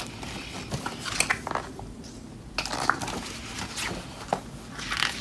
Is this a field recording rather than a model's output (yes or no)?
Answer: yes